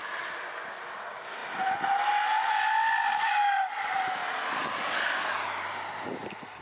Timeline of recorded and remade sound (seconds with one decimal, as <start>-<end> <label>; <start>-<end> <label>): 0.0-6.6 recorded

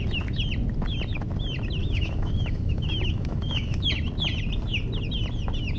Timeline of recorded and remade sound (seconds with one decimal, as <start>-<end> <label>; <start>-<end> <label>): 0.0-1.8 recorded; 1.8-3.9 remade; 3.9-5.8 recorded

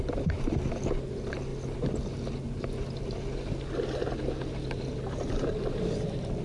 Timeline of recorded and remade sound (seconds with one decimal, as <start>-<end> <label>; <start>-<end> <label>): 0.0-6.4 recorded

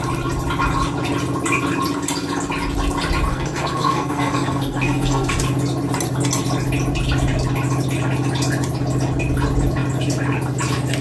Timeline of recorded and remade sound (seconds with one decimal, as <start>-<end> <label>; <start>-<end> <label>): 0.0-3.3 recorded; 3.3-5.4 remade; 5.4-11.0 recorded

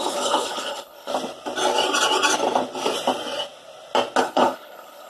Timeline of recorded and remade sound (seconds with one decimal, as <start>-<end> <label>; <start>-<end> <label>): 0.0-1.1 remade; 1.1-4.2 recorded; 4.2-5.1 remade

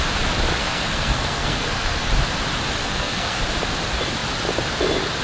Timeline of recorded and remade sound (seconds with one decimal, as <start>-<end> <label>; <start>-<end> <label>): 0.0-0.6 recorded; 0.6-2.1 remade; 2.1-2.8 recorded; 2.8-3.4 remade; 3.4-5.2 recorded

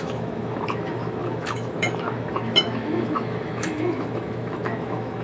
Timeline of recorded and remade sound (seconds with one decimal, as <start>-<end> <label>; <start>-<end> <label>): 0.0-5.2 remade

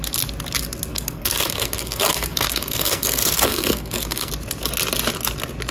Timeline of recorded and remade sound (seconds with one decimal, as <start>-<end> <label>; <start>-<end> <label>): 0.0-0.9 recorded; 0.9-4.3 remade; 4.3-5.7 recorded